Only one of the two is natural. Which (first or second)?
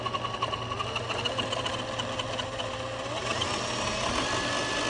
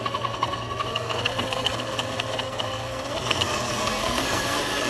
first